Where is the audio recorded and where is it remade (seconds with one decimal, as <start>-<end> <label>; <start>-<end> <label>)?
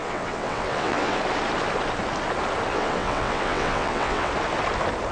0.0-1.2 remade; 1.2-2.7 recorded; 2.7-4.3 remade; 4.3-5.1 recorded